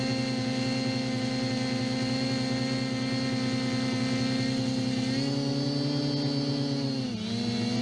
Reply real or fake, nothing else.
real